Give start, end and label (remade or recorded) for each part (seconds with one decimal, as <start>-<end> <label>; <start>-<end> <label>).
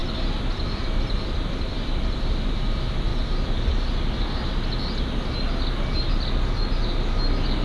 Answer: 0.0-3.1 remade; 3.1-7.6 recorded